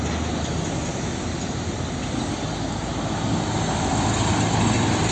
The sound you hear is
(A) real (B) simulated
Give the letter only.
A